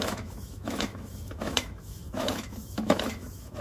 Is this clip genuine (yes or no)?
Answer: no